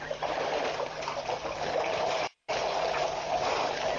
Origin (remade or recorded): remade